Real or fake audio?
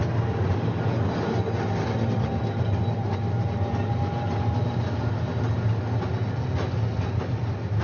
real